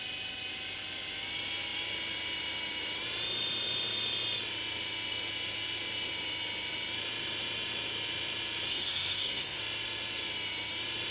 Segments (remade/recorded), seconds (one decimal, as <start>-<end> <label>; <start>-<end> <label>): 0.0-8.7 recorded; 8.7-9.6 remade; 9.6-11.1 recorded